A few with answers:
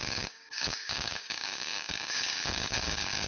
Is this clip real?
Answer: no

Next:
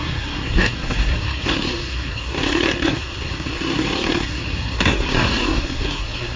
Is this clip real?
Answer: no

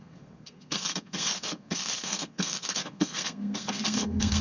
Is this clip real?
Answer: no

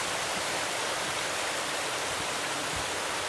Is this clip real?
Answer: no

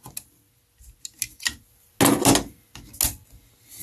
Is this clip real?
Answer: yes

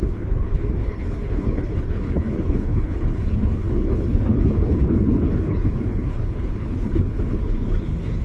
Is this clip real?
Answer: no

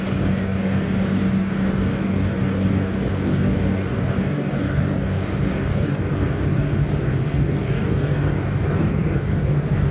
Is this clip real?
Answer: no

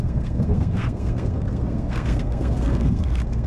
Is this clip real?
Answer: no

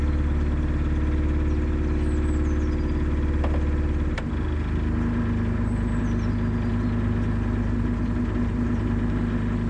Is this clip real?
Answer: yes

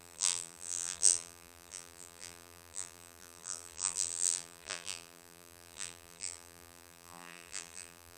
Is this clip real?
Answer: no